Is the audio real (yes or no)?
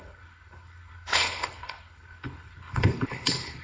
no